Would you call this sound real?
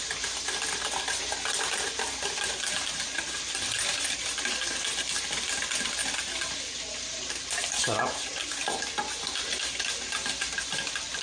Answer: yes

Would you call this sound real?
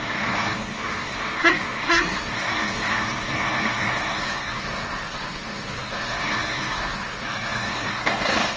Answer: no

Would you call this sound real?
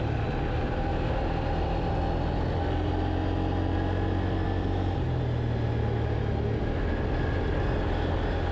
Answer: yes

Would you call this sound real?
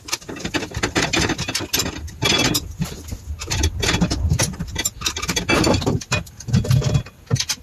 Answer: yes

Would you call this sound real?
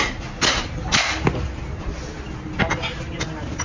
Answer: yes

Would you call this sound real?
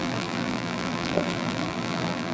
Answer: no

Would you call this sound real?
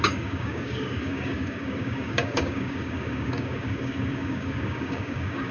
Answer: no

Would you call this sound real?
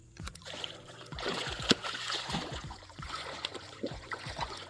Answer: no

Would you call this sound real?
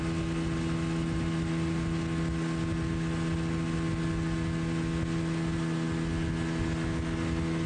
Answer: yes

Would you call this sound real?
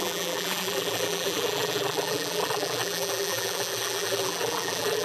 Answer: no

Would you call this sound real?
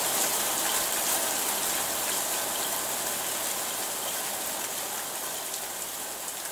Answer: yes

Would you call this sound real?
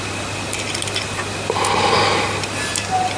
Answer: yes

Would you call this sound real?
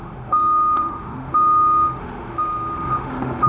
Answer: no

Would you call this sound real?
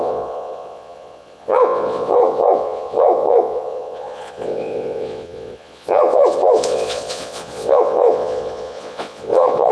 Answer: no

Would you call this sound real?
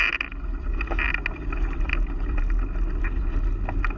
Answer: yes